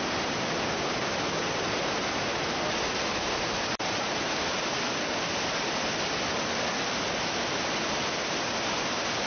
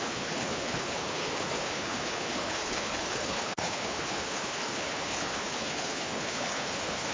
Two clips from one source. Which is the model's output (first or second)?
second